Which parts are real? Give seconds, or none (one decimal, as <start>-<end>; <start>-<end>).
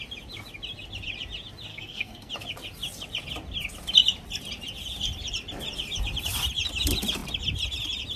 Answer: 0.0-1.7; 2.3-8.2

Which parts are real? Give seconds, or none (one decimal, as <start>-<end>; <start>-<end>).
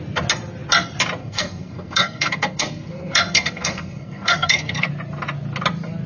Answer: 0.0-1.2; 4.9-6.1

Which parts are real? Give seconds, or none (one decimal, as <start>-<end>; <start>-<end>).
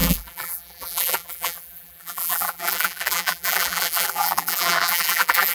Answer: none